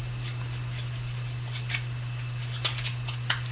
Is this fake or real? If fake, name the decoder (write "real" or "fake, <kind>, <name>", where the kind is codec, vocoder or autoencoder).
real